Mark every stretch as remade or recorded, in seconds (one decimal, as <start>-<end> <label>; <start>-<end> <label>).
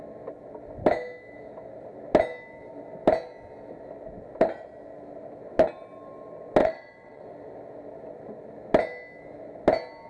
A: 0.0-6.6 recorded; 6.6-7.2 remade; 7.2-10.1 recorded